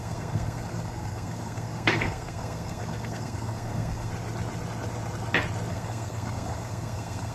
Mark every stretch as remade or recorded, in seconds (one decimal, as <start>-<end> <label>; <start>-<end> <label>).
0.0-4.1 remade; 4.1-5.7 recorded; 5.7-7.3 remade